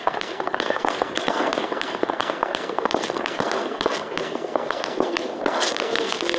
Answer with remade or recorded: remade